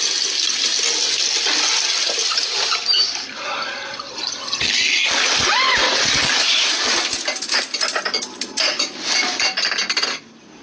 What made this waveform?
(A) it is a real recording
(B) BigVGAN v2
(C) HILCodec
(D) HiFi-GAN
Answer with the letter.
A